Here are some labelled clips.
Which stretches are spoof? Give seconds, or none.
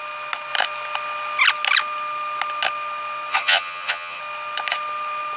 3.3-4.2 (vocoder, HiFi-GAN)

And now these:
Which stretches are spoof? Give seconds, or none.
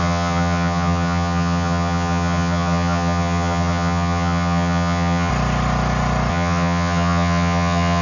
0.0-5.3 (vocoder, HiFi-GAN); 6.3-8.0